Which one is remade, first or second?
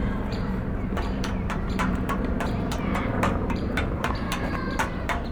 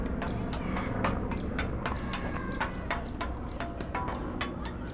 first